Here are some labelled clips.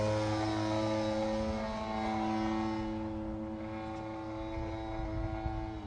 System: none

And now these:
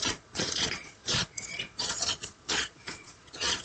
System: vocoder, Vocos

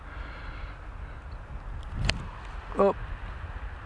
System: none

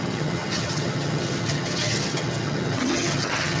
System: vocoder, HiFi-GAN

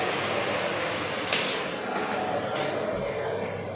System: none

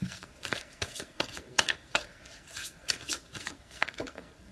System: codec, SNAC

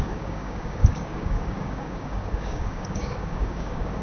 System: codec, DAC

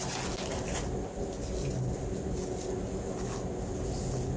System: none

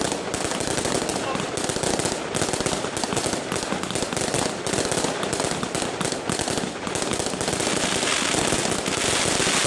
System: none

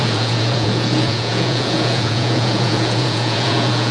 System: vocoder, Vocos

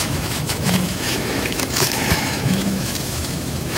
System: autoencoder, DAC-VAE